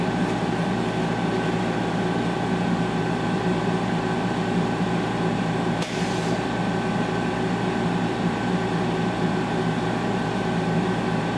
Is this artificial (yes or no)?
no